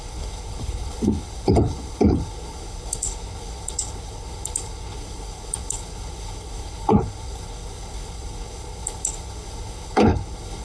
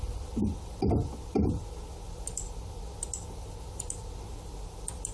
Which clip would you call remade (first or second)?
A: first